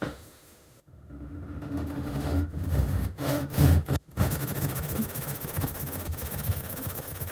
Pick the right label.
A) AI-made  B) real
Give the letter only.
A